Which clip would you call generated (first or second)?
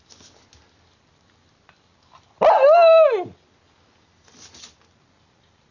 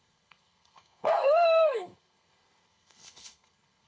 second